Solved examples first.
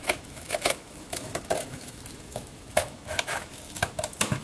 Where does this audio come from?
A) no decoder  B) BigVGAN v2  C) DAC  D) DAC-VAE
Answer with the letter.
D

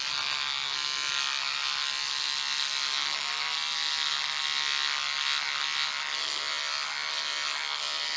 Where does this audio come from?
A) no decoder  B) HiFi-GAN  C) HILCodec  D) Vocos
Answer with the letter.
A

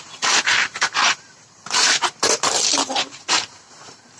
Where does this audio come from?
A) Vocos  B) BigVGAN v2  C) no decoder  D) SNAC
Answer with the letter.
B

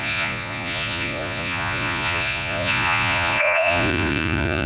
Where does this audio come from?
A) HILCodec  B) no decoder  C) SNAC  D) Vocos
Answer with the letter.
D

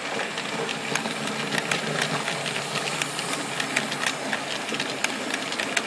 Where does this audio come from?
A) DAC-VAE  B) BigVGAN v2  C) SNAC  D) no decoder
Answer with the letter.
D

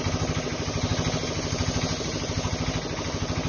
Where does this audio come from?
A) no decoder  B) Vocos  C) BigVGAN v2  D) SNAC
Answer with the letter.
A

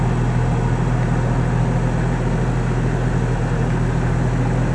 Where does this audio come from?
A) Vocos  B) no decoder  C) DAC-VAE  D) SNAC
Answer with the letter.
B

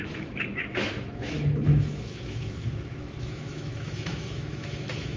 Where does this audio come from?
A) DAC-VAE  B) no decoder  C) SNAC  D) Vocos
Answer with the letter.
A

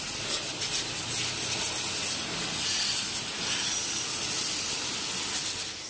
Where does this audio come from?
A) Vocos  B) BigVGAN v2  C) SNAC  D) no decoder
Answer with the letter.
D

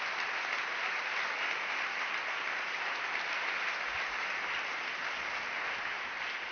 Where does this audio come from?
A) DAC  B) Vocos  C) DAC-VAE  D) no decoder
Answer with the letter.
D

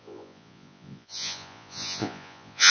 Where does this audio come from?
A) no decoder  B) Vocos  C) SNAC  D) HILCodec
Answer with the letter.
B